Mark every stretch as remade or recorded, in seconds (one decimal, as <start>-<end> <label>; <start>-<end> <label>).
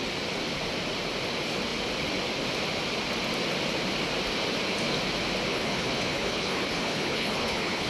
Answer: 0.0-5.5 recorded; 5.5-7.9 remade